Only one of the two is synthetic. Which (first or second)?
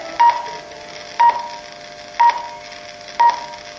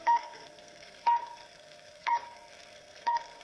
second